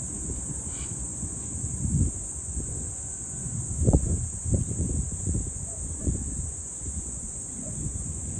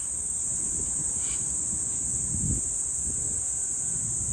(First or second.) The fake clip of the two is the first